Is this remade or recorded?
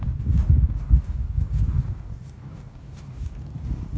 remade